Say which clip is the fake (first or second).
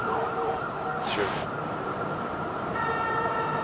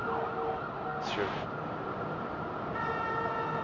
first